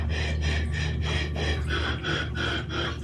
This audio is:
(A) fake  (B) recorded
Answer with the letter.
B